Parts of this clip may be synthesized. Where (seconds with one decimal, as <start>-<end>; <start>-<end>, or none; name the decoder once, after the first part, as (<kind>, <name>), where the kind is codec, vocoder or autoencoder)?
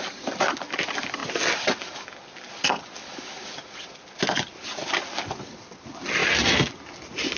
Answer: none